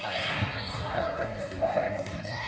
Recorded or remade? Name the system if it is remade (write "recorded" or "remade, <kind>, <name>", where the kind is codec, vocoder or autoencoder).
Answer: remade, codec, SNAC